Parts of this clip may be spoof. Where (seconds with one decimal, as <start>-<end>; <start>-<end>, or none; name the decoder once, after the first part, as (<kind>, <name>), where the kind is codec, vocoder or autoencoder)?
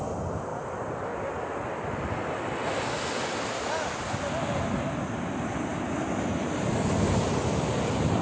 none